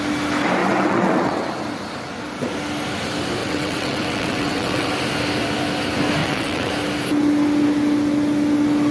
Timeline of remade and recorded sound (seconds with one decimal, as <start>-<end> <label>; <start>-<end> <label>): 0.0-0.6 recorded; 0.6-1.5 remade; 1.5-3.4 recorded; 3.4-4.9 remade; 4.9-6.2 recorded; 6.2-6.7 remade; 6.7-8.9 recorded